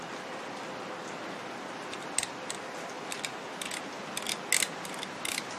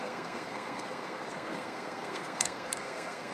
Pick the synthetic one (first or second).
second